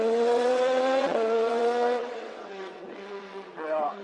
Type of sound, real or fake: fake